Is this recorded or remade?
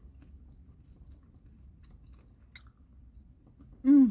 recorded